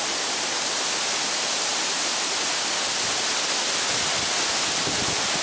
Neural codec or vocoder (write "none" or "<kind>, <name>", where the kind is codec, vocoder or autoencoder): none